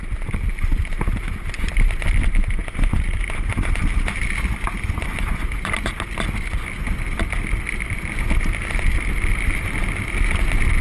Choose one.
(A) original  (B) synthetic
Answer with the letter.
A